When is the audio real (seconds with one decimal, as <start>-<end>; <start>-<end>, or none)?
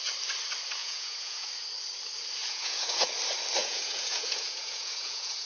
0.0-0.8; 1.5-2.4; 3.1-3.6